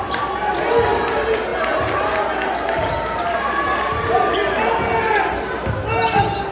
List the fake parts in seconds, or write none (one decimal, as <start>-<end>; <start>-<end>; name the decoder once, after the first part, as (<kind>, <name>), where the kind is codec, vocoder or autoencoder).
none